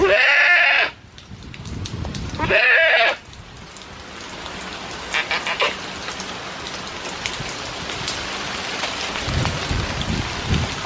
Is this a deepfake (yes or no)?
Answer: no